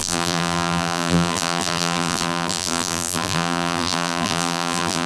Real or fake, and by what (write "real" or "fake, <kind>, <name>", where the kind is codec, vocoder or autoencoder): fake, vocoder, BigVGAN v2